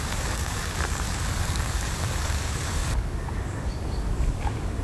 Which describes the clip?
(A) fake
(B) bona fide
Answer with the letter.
A